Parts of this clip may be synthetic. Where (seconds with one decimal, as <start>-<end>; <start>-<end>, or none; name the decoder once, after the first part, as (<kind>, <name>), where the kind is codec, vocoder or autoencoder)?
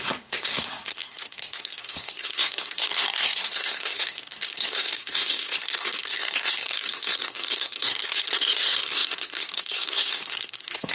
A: 0.0-10.9 (codec, SNAC)